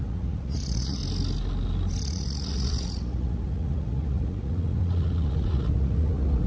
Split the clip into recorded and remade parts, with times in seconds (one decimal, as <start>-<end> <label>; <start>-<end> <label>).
0.0-1.0 remade; 1.0-2.0 recorded; 2.0-6.5 remade